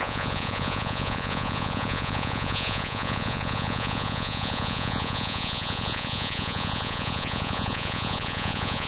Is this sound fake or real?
fake